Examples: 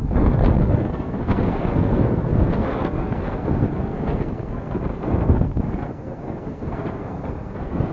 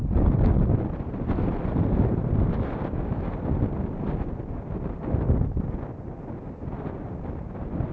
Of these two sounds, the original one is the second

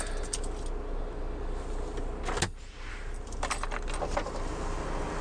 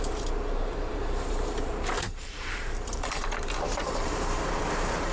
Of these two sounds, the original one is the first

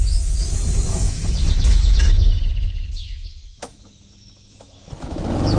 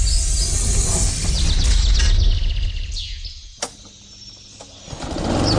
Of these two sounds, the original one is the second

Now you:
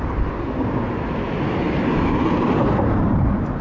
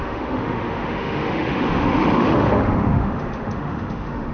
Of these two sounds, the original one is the first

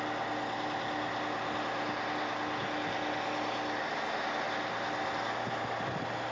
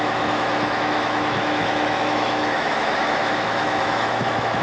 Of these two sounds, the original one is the first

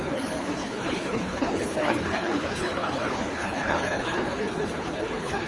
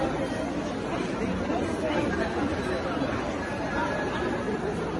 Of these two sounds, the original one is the second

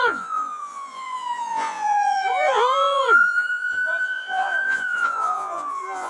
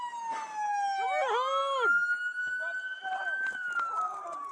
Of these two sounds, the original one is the second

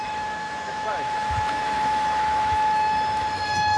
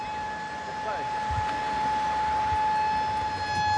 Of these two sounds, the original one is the second